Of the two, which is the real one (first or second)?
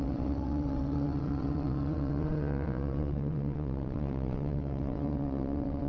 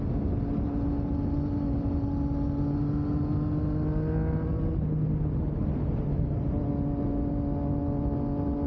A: second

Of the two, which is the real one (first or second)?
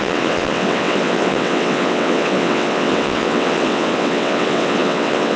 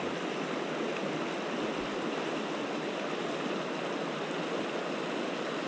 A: second